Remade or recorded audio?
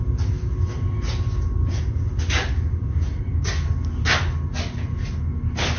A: recorded